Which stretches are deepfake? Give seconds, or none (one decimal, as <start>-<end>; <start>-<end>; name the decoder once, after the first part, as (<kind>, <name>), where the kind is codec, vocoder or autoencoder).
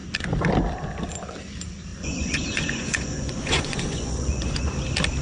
1.9-4.7 (vocoder, Vocos)